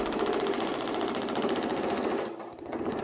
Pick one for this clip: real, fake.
real